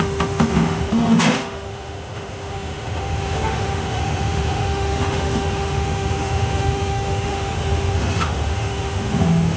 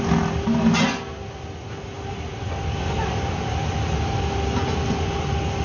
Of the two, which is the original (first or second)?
second